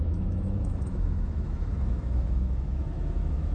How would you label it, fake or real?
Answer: fake